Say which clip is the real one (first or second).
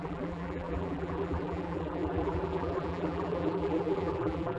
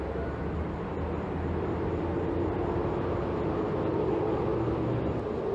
second